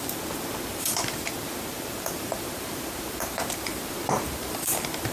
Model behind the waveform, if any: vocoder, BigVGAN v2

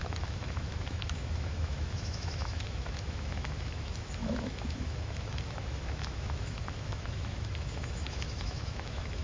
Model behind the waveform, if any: autoencoder, DAC-VAE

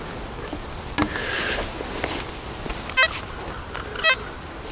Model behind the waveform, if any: none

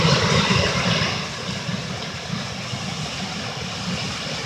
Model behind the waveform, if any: none